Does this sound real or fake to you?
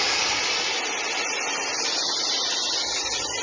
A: real